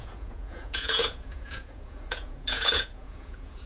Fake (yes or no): yes